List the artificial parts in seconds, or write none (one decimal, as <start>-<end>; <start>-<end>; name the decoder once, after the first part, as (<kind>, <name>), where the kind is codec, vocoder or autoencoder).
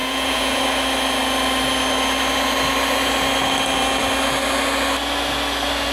0.0-0.6 (vocoder, Vocos)